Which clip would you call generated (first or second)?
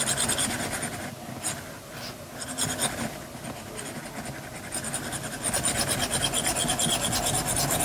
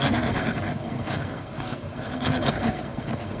second